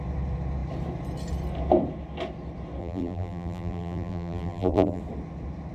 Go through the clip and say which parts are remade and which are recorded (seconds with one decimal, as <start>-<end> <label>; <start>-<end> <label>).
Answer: 0.0-2.8 recorded; 2.8-5.0 remade; 5.0-5.7 recorded